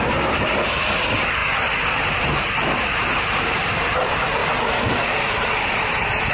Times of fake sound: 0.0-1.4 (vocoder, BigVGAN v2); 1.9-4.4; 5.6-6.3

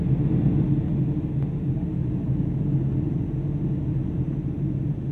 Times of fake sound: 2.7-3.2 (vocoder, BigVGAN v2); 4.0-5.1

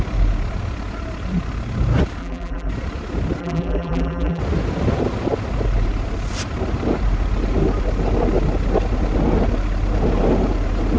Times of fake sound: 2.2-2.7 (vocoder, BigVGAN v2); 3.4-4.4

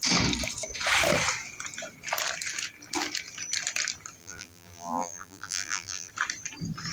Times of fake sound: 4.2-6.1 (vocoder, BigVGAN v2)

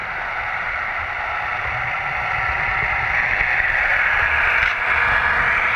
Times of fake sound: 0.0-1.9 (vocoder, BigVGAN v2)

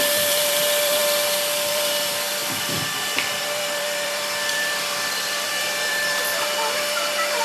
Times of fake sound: 0.0-1.0 (vocoder, BigVGAN v2); 1.7-7.4

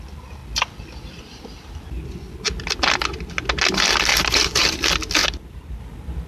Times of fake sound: 4.1-4.6 (vocoder, BigVGAN v2); 5.2-5.8